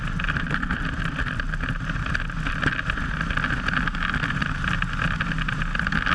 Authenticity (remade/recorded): recorded